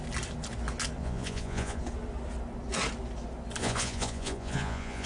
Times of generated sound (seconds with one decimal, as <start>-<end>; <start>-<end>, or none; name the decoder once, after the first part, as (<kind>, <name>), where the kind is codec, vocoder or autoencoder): 1.0-1.8 (vocoder, Vocos); 3.6-5.1